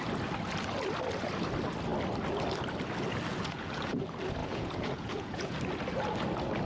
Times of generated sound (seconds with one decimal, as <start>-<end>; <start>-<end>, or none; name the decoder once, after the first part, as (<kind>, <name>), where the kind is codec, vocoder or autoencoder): 3.3-4.0 (vocoder, Vocos); 4.4-5.6